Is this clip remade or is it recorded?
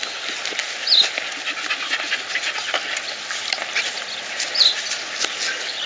recorded